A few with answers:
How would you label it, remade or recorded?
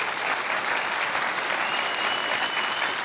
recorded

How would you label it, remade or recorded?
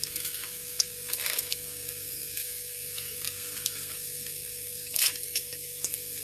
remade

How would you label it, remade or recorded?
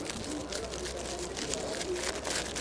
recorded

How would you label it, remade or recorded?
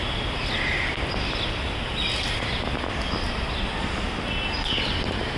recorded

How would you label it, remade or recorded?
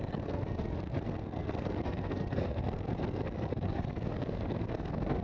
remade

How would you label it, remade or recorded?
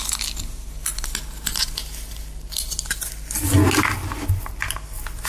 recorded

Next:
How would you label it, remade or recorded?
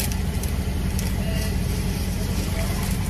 recorded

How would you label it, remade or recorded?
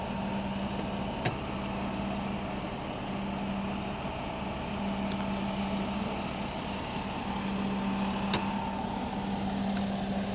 recorded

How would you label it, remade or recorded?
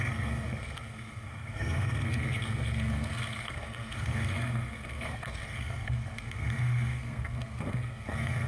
remade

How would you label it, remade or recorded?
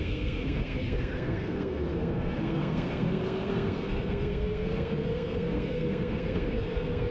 remade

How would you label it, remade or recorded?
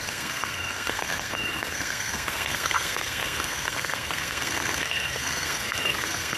remade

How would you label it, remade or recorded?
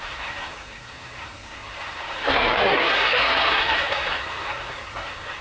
remade